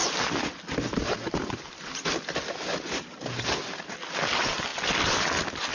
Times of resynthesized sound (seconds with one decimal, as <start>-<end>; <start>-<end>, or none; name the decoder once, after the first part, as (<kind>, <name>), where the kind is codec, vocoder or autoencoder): none

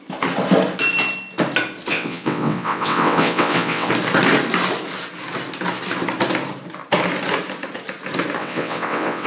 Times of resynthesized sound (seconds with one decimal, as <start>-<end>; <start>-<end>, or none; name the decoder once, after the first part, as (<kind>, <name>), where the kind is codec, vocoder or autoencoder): 1.9-3.9 (vocoder, WaveNeXt); 8.4-9.3

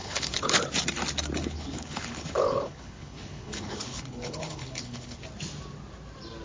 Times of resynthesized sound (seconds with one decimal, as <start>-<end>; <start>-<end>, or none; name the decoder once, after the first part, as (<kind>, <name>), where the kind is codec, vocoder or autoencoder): 0.0-0.6 (codec, HILCodec); 1.4-5.2

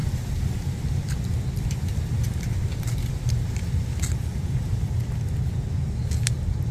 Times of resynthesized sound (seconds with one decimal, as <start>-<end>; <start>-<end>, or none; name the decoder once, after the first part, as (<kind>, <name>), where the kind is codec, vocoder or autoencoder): none

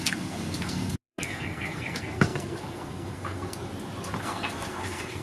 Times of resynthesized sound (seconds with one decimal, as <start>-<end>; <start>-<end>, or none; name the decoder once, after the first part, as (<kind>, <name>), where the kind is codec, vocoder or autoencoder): 0.0-3.7 (codec, SNAC); 4.2-5.2

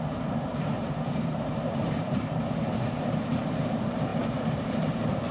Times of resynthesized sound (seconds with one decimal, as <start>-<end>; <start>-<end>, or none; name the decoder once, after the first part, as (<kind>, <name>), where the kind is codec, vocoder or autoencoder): 0.0-5.3 (vocoder, BigVGAN v2)